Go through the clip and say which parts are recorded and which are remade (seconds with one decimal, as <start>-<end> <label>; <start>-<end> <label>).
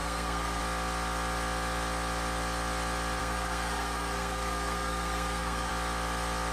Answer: 0.0-0.6 remade; 0.6-3.2 recorded; 3.2-5.7 remade; 5.7-6.5 recorded